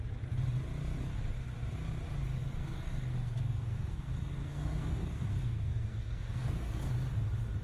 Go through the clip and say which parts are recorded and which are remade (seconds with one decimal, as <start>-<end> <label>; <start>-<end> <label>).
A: 0.0-2.4 recorded; 2.4-6.9 remade; 6.9-7.6 recorded